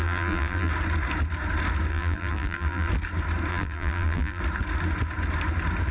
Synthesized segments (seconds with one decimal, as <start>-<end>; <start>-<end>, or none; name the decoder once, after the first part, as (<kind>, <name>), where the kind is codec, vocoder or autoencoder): 0.0-0.7 (vocoder, BigVGAN v2); 1.9-2.9; 3.5-4.4